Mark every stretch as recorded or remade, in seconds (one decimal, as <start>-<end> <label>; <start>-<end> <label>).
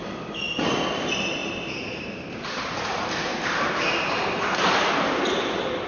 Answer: 0.0-1.4 recorded; 1.4-4.9 remade; 4.9-5.9 recorded